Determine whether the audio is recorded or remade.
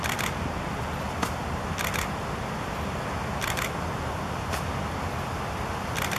recorded